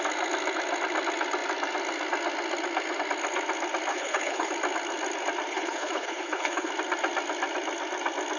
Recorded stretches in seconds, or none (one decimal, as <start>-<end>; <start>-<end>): 0.0-3.9; 4.5-5.5; 6.7-8.4